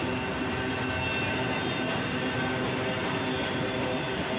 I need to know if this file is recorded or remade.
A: recorded